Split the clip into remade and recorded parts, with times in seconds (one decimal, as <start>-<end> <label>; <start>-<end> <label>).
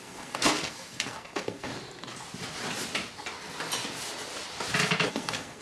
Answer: 0.0-1.7 remade; 1.7-5.1 recorded; 5.1-5.6 remade